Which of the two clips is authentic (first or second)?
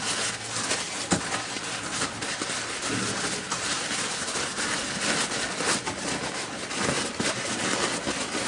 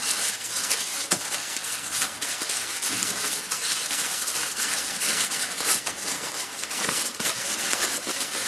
first